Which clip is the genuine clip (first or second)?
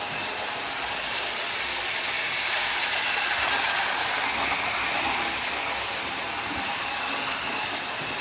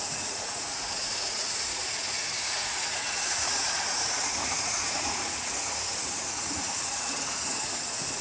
first